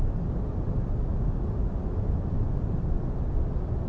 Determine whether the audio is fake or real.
real